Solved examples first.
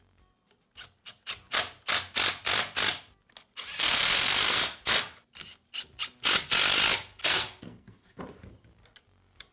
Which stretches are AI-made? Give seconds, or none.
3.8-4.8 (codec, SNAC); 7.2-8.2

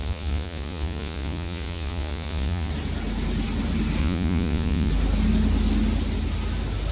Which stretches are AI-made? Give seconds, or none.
0.0-2.7 (vocoder, Vocos); 4.0-4.9

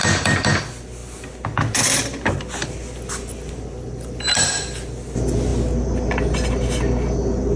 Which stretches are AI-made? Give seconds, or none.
0.0-0.6 (vocoder, BigVGAN v2)

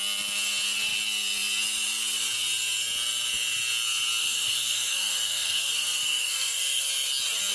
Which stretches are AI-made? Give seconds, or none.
4.2-6.9 (codec, SNAC)

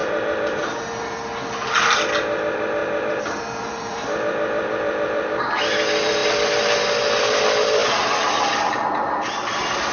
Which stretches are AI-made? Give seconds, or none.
0.0-6.2 (vocoder, BigVGAN v2); 7.2-7.8; 9.5-9.9

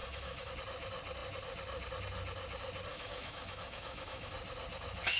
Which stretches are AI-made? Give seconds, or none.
0.0-0.5 (autoencoder, DAC-VAE); 2.9-4.3